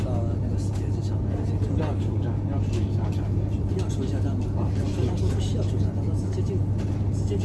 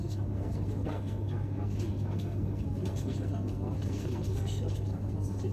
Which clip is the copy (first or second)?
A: second